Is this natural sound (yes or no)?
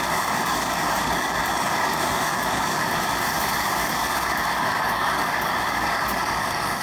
no